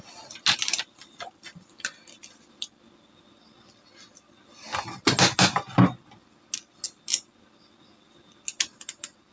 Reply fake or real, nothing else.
real